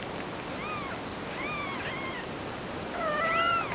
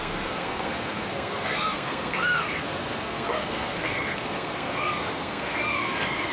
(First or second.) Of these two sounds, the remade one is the second